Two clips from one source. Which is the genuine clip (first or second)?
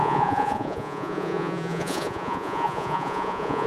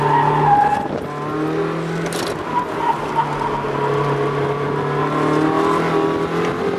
second